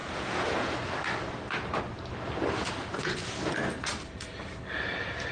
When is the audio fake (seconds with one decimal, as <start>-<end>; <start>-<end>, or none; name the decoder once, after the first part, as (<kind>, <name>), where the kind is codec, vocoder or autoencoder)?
0.0-0.9 (vocoder, Vocos); 2.9-3.5